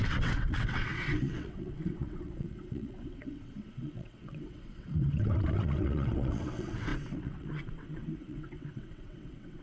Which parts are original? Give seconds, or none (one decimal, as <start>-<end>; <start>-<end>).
none